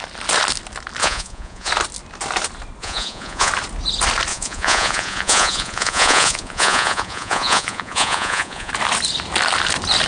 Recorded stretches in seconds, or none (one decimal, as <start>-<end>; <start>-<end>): 0.0-1.0; 1.7-2.8; 3.5-4.3; 8.7-10.1